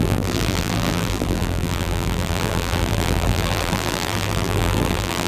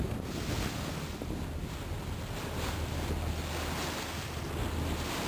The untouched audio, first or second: second